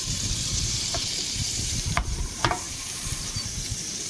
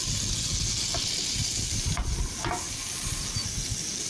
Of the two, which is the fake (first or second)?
first